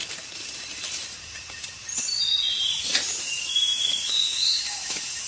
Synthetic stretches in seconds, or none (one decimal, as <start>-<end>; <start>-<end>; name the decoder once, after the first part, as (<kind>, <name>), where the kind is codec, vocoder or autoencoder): 3.2-5.3 (autoencoder, DAC-VAE)